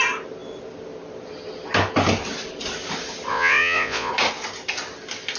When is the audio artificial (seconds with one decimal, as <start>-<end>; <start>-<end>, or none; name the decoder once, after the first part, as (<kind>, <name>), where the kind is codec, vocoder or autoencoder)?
3.3-4.1 (vocoder, Vocos)